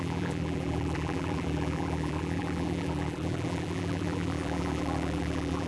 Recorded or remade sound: remade